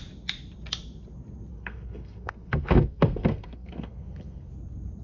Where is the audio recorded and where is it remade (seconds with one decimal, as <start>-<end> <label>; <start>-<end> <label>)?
0.0-1.5 recorded; 1.5-4.5 remade; 4.5-5.0 recorded